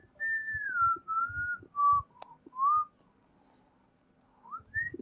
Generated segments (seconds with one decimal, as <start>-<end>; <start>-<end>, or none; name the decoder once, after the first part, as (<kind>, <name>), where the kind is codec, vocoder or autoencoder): none